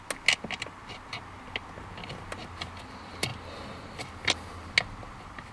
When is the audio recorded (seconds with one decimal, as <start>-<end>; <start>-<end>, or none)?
0.0-5.5